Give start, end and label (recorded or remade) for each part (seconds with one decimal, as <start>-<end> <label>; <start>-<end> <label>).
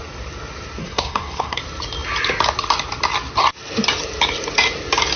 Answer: 0.0-0.8 recorded; 0.8-1.6 remade; 1.6-5.2 recorded